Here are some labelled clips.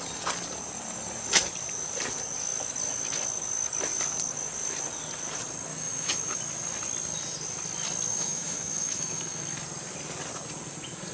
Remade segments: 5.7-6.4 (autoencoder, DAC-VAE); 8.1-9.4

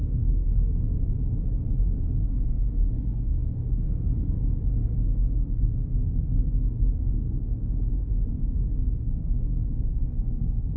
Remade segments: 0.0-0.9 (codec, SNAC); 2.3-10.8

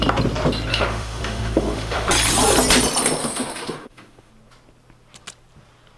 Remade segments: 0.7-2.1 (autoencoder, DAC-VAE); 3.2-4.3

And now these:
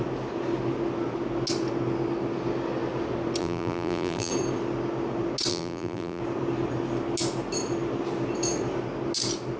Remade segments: 3.4-4.3 (vocoder, BigVGAN v2); 5.5-6.2

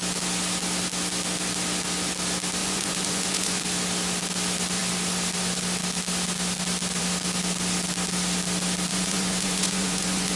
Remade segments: 2.6-3.6 (vocoder, Vocos); 8.9-10.4

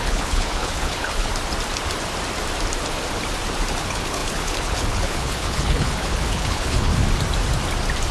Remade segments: 0.0-1.3 (codec, HILCodec); 3.7-6.9